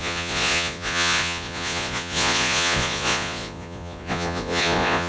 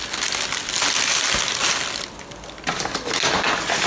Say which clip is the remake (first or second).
first